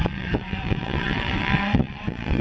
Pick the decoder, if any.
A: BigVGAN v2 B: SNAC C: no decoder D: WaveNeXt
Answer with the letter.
D